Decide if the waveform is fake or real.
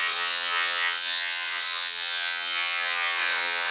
fake